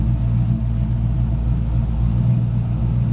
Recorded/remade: recorded